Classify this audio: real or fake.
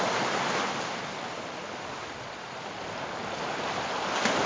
fake